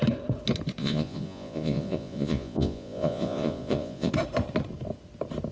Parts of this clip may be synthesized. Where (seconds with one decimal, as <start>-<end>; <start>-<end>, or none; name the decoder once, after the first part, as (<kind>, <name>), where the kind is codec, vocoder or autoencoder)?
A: 0.8-4.1 (vocoder, Vocos)